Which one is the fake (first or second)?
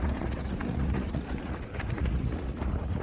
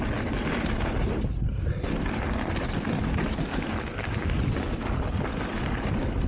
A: first